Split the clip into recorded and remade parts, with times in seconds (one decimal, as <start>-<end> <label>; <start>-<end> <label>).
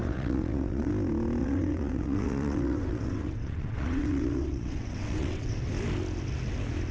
0.0-0.9 remade; 0.9-1.4 recorded; 1.4-5.5 remade; 5.5-6.9 recorded